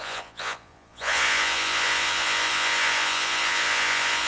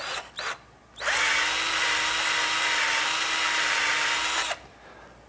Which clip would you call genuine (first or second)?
second